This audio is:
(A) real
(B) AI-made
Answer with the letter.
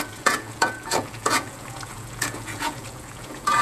B